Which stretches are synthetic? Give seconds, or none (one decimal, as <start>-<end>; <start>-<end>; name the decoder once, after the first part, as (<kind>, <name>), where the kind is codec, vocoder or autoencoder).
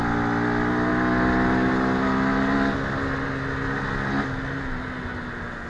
none